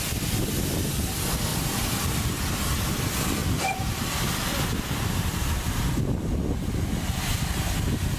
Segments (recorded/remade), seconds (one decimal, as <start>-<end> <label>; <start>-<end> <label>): 0.0-1.5 recorded; 1.5-2.3 remade; 2.3-3.4 recorded; 3.4-5.6 remade; 5.6-8.2 recorded